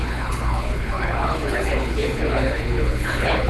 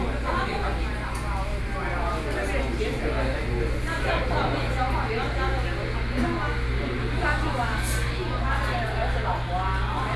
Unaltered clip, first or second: second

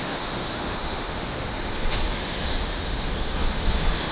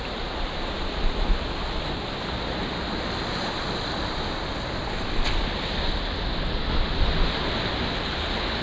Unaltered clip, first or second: second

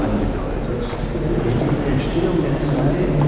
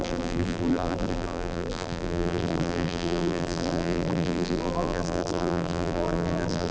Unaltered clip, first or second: first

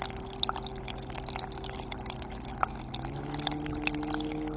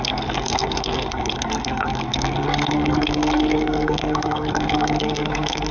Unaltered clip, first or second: first